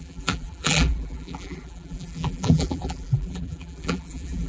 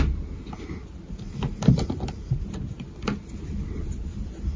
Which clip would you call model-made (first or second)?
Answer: first